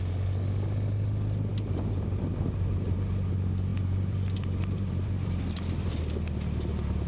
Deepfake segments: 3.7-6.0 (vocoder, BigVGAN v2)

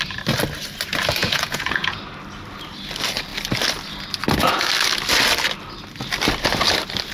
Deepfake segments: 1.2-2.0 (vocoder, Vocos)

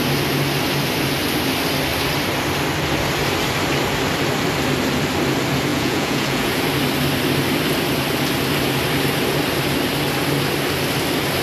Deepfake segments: 5.7-6.6 (vocoder, Vocos)

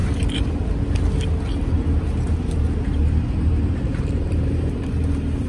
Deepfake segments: 0.0-0.5 (vocoder, BigVGAN v2); 1.6-4.9

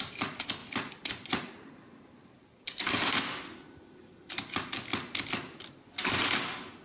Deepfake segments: 0.6-1.7 (vocoder, BigVGAN v2); 3.5-4.4

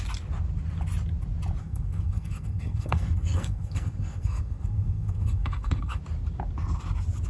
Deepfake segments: 1.6-6.0 (codec, SNAC)